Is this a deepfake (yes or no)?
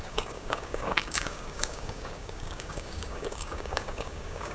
yes